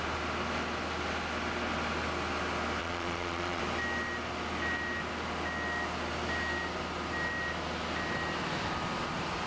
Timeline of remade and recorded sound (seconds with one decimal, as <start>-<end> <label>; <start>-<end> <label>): 0.0-2.8 recorded; 2.8-3.6 remade; 3.6-9.5 recorded